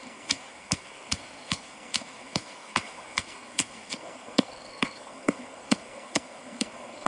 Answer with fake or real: fake